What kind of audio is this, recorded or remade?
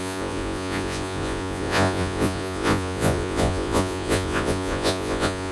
remade